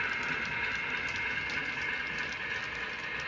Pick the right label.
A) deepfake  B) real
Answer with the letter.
B